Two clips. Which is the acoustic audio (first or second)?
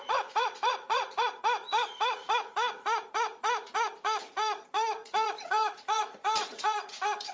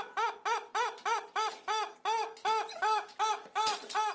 second